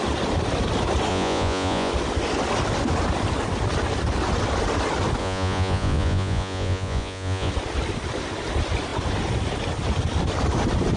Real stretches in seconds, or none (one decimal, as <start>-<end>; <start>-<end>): 0.0-1.1; 1.9-5.2; 7.5-11.0